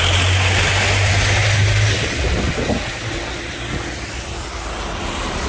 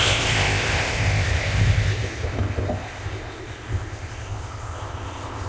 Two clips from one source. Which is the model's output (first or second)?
second